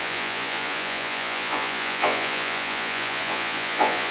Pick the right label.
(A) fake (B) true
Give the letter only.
A